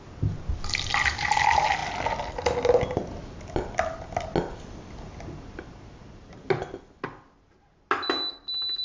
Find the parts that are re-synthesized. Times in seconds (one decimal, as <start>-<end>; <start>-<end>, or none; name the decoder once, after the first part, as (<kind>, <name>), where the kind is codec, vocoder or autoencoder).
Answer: none